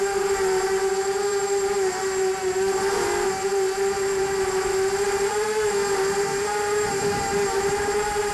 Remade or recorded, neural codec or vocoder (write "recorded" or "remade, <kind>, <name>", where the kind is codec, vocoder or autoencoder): remade, vocoder, BigVGAN v2